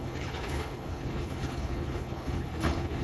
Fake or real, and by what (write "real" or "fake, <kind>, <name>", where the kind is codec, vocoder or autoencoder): fake, codec, HILCodec